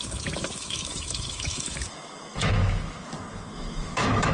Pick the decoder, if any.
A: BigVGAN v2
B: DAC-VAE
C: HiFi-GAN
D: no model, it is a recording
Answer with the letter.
B